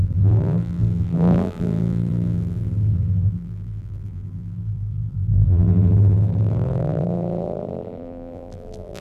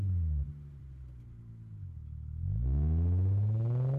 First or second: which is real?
second